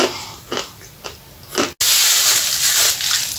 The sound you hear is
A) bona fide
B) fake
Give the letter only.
A